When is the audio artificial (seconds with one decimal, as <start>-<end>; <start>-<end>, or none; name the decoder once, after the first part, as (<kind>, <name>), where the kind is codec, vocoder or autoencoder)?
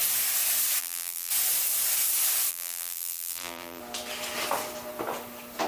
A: 0.8-1.3 (vocoder, BigVGAN v2); 2.5-3.8